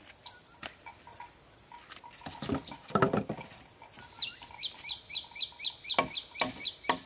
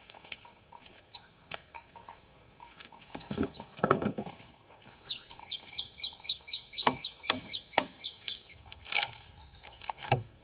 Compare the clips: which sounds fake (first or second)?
second